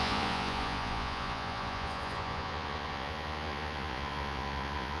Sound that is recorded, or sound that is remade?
remade